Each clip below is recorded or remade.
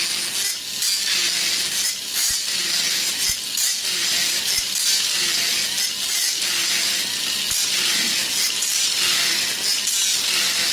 recorded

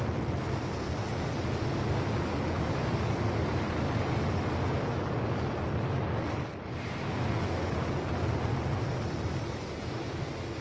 recorded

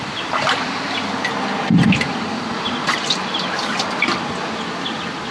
recorded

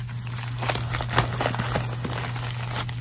recorded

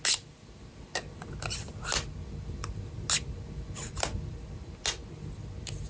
recorded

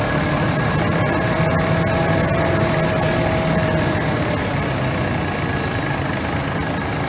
recorded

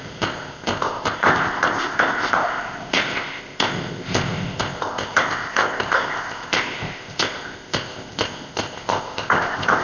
remade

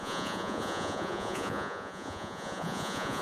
remade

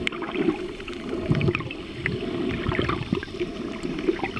remade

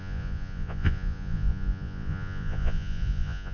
remade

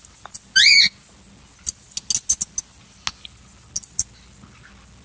recorded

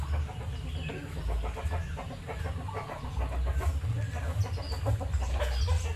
recorded